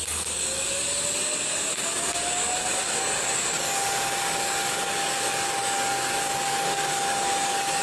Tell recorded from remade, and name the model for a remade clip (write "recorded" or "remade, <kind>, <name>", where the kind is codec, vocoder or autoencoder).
remade, codec, DAC